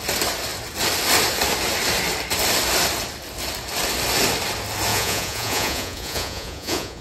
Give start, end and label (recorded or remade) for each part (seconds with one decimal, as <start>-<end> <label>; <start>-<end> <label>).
0.0-4.9 recorded; 4.9-7.0 remade